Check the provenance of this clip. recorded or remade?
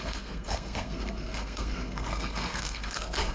remade